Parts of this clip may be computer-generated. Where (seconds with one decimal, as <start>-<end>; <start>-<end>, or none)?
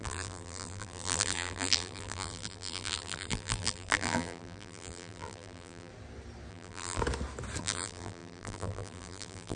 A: 0.0-5.9; 6.5-7.0; 7.6-9.6